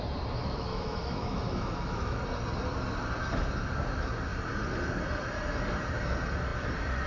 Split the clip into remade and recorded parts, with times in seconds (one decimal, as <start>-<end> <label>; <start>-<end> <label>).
0.0-0.4 recorded; 0.4-2.2 remade; 2.2-7.1 recorded